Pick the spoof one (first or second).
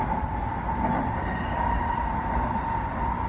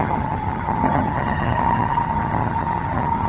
second